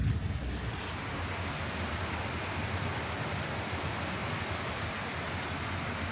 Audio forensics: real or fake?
real